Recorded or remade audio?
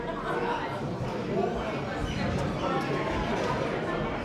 recorded